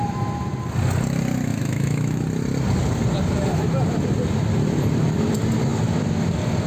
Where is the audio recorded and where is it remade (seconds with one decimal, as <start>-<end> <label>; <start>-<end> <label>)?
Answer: 0.0-1.5 recorded; 1.5-2.2 remade; 2.2-6.7 recorded